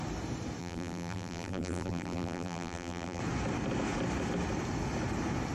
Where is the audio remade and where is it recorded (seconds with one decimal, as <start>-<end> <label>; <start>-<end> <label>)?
0.0-0.6 recorded; 0.6-3.2 remade; 3.2-5.5 recorded